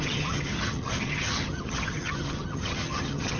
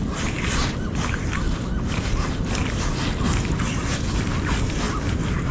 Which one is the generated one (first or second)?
first